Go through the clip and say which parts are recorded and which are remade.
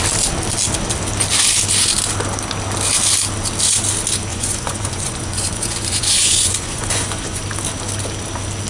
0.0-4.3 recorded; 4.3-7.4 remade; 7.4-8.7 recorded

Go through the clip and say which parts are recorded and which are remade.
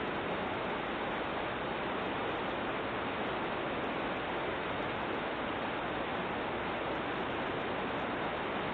0.0-8.7 recorded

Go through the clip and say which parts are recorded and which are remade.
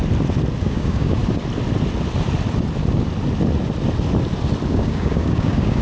0.0-0.6 recorded; 0.6-1.2 remade; 1.2-4.7 recorded; 4.7-5.8 remade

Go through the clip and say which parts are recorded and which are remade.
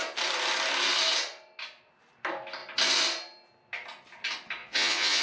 0.0-4.6 recorded; 4.6-5.2 remade